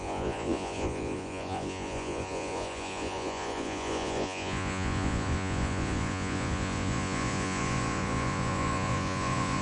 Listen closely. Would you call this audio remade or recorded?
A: remade